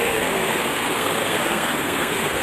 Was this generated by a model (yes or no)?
yes